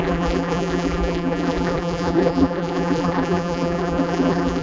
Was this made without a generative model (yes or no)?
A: no